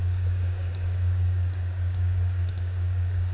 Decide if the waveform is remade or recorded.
remade